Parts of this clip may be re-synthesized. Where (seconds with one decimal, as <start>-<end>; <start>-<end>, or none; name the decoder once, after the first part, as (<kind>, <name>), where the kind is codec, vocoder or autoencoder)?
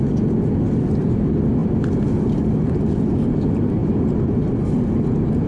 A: none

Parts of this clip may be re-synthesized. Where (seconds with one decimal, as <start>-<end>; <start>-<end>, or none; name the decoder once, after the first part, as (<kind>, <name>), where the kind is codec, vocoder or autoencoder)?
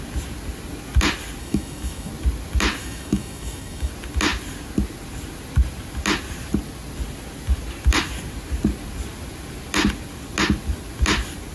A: 1.4-2.1 (autoencoder, DAC-VAE); 2.8-3.9